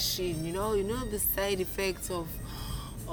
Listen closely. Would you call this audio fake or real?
real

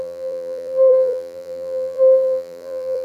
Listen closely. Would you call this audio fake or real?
fake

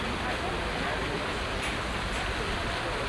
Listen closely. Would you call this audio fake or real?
fake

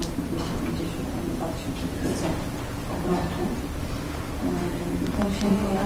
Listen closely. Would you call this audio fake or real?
fake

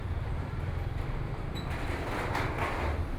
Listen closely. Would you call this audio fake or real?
fake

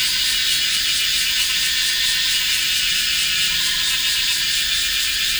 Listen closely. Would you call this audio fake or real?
real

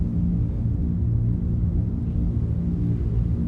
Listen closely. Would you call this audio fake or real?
real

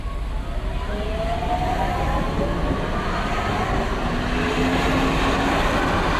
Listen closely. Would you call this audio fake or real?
real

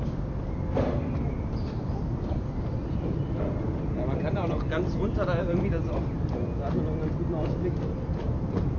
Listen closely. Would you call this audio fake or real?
real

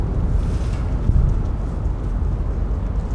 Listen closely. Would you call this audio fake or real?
fake